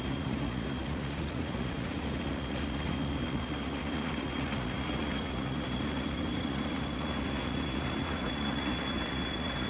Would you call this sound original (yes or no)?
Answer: no